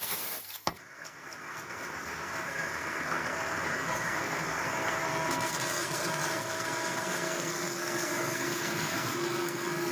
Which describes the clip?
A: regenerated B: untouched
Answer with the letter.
A